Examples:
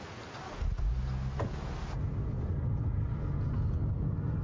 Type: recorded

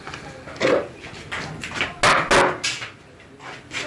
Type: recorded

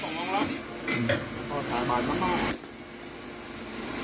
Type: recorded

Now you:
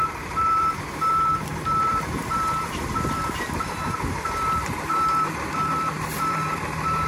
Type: remade